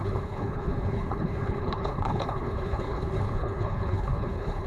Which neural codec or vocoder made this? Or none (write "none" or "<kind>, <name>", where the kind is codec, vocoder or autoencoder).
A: codec, HILCodec